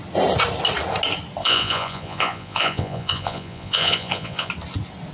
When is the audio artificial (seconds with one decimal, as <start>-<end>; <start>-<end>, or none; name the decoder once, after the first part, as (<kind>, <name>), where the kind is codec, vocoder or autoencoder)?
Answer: 1.4-4.5 (vocoder, Vocos)